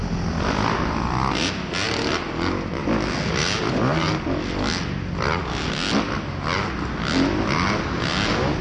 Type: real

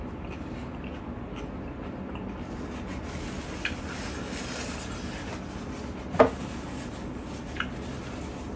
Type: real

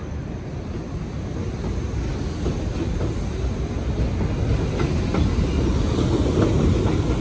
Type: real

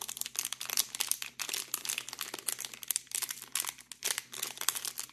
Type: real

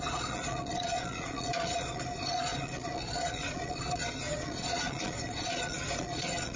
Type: fake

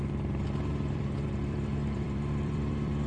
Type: fake